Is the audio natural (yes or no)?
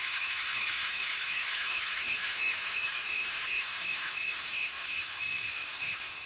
no